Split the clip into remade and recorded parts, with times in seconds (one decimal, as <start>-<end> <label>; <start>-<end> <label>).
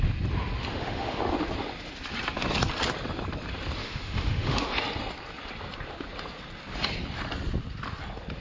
0.0-0.7 recorded; 0.7-1.2 remade; 1.2-3.8 recorded; 3.8-4.8 remade; 4.8-8.4 recorded